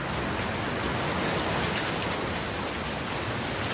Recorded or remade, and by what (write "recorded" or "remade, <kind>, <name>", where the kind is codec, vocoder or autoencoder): recorded